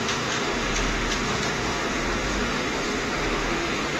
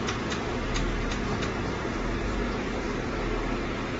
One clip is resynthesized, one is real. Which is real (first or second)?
second